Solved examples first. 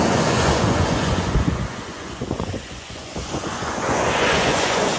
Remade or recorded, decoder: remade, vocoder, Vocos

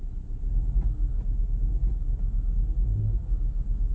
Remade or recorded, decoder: recorded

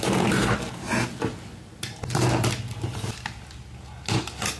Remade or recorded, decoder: recorded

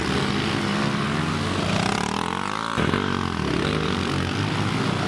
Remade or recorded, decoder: recorded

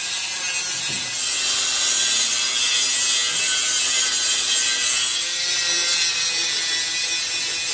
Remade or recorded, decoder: recorded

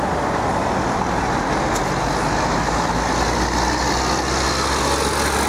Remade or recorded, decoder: recorded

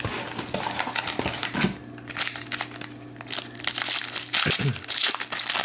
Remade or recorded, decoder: recorded